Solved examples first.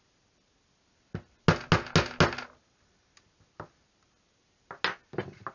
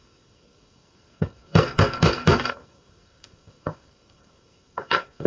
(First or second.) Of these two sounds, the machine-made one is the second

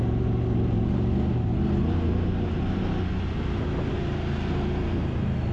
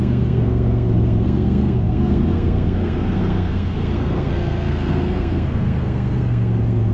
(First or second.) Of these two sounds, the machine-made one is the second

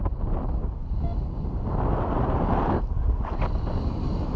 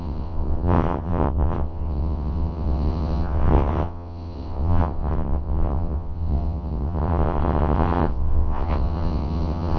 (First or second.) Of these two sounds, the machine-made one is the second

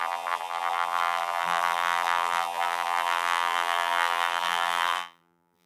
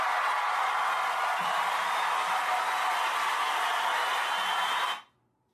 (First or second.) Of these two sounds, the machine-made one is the first